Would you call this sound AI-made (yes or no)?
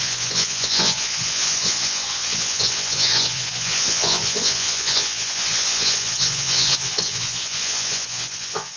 yes